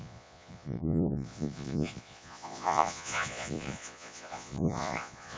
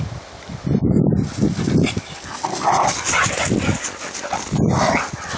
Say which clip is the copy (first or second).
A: first